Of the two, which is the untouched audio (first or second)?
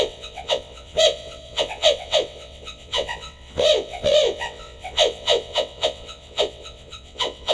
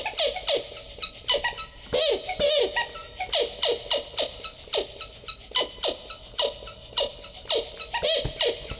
second